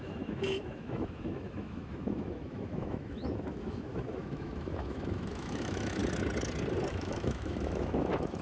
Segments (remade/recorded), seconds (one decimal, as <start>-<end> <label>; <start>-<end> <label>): 0.0-6.0 remade; 6.0-6.9 recorded; 6.9-8.4 remade